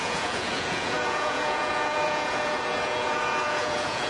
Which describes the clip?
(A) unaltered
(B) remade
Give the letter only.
B